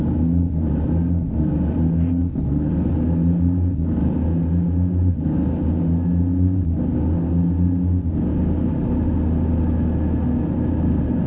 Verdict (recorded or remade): recorded